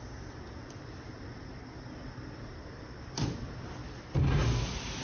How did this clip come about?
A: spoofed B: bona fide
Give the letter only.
A